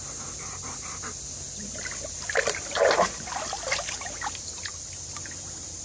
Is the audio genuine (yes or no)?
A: yes